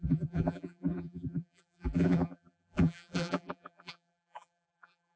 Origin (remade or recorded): remade